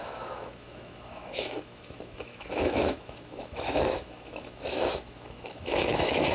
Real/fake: fake